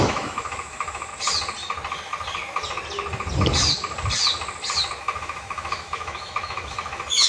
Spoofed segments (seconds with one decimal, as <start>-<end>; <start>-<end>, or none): 0.0-1.1; 5.0-7.3